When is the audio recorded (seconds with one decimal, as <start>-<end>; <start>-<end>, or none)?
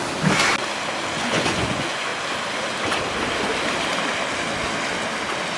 0.0-1.1; 2.1-5.6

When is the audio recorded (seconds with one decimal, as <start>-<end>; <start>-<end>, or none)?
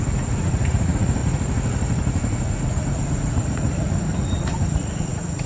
none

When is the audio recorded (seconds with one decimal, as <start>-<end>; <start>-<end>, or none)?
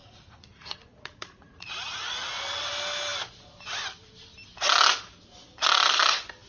2.7-6.5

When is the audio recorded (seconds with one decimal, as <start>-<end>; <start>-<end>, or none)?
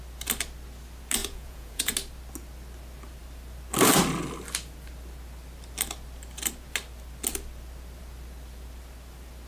0.0-1.2; 1.9-9.5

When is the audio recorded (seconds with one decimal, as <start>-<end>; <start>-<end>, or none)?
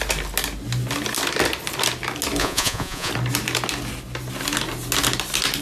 0.0-2.4; 3.1-5.6